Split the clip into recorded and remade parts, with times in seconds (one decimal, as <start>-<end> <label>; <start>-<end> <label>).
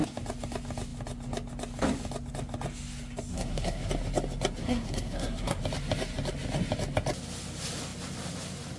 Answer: 0.0-3.3 recorded; 3.3-3.9 remade; 3.9-4.6 recorded; 4.6-5.6 remade; 5.6-8.8 recorded